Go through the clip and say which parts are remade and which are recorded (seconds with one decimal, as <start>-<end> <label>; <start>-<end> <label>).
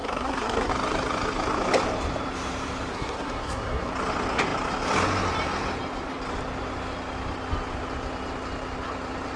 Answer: 0.0-0.7 remade; 0.7-2.9 recorded; 2.9-3.9 remade; 3.9-9.4 recorded